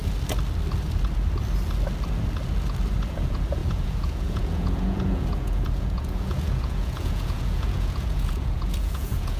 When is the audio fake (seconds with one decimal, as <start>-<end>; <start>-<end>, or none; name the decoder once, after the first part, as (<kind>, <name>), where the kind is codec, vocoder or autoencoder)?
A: 3.1-9.4 (vocoder, Vocos)